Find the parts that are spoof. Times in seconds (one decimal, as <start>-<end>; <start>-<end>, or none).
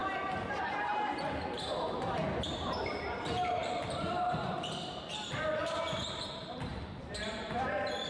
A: 0.0-8.1